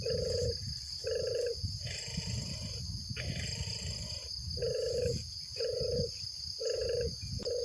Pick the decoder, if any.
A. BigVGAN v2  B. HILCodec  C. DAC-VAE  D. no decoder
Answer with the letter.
D